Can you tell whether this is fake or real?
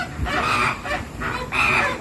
fake